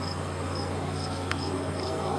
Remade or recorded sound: remade